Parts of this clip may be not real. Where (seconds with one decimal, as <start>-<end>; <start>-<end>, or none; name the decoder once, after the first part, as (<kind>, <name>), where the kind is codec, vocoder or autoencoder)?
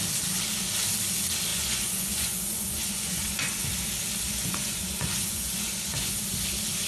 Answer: 1.5-3.6 (vocoder, Vocos); 4.4-6.2